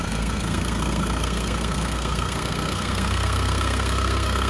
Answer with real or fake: fake